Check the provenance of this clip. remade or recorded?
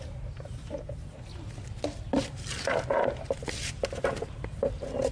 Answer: recorded